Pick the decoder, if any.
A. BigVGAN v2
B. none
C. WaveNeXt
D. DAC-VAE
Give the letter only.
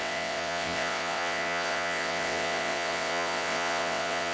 C